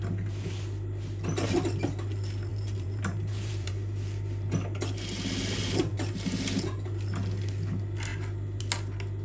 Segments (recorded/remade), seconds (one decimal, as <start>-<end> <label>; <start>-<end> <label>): 0.0-2.5 recorded; 2.5-3.7 remade; 3.7-9.2 recorded